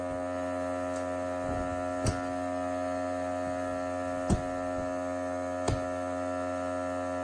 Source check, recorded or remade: recorded